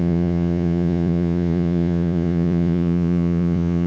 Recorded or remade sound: remade